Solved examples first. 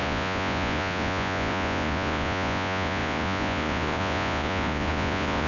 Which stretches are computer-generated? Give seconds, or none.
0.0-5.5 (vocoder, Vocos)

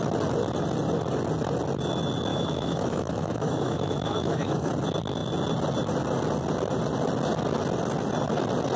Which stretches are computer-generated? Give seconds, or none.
2.3-4.7 (autoencoder, DAC-VAE)

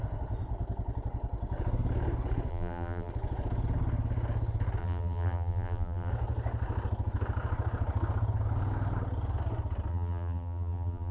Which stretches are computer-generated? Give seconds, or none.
2.5-3.1 (vocoder, BigVGAN v2); 4.8-6.1; 9.9-11.1

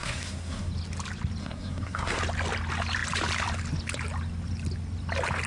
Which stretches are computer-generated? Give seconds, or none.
0.0-0.7 (codec, SNAC); 1.4-2.2